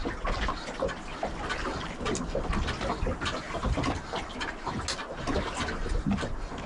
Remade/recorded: recorded